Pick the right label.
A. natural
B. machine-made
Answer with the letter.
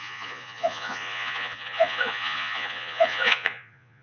B